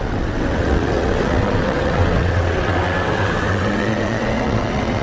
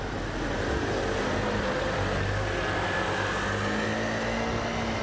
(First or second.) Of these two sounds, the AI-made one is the first